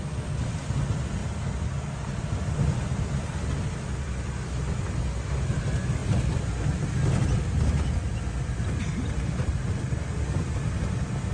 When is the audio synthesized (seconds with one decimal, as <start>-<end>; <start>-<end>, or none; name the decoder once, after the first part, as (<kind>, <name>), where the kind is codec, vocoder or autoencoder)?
none